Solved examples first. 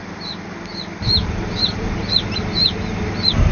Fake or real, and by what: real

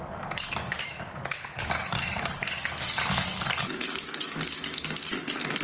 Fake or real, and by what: fake, codec, DAC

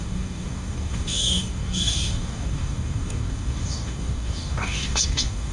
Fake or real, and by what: fake, codec, DAC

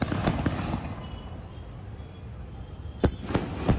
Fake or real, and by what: real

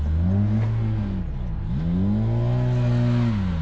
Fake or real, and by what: real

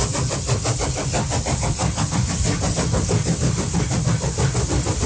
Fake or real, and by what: real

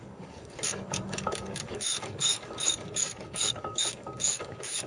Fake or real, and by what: fake, codec, DAC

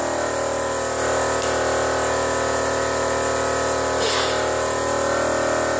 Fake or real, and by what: real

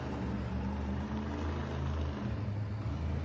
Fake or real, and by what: real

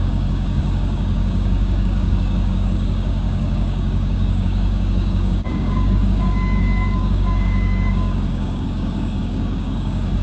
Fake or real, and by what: fake, codec, DAC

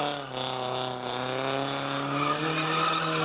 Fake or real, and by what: real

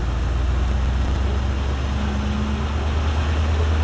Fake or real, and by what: real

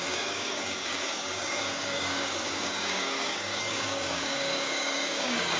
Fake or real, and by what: fake, codec, DAC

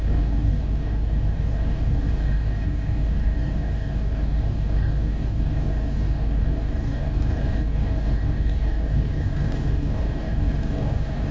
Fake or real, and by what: fake, codec, DAC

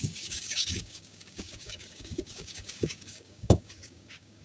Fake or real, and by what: fake, codec, DAC